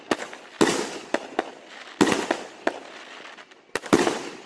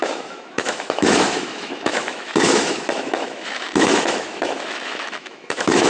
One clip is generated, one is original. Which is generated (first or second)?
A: second